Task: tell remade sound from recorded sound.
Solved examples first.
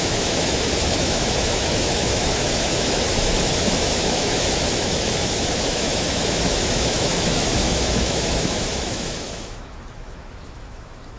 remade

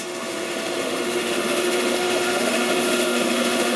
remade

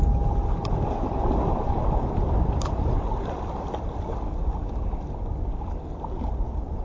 recorded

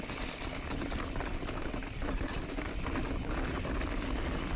recorded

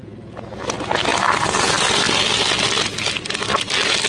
recorded